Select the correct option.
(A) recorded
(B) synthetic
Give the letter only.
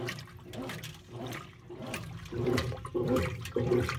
A